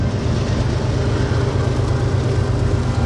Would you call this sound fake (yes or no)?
no